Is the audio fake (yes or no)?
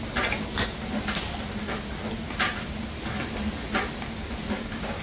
no